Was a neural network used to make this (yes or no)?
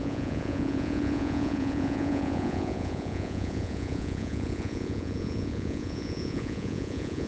yes